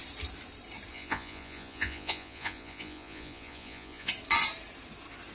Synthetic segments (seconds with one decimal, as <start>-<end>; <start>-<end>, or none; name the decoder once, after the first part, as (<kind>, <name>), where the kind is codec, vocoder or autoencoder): 0.9-4.1 (vocoder, Vocos)